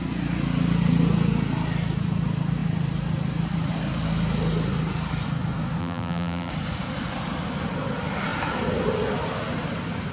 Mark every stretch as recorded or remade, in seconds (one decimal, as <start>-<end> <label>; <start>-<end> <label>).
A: 0.0-5.8 recorded; 5.8-6.5 remade; 6.5-10.1 recorded